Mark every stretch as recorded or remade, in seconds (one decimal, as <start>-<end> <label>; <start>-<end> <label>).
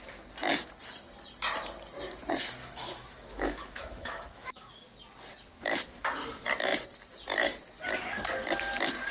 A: 0.0-2.6 recorded; 2.6-4.7 remade; 4.7-9.1 recorded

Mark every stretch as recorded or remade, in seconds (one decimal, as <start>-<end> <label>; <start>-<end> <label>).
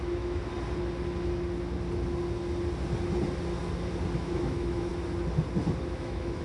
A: 0.0-0.4 remade; 0.4-4.2 recorded; 4.2-4.9 remade; 4.9-5.8 recorded; 5.8-6.4 remade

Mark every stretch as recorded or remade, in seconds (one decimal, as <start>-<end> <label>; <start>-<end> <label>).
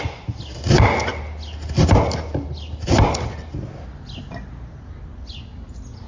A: 0.0-6.1 recorded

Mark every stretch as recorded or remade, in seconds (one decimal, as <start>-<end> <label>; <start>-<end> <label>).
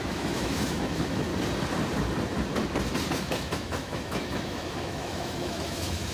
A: 0.0-1.3 remade; 1.3-3.1 recorded; 3.1-6.1 remade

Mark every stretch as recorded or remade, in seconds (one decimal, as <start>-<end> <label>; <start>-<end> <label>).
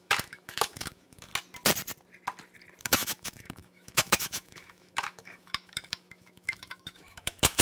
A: 0.0-1.3 remade; 1.3-2.8 recorded; 2.8-7.6 remade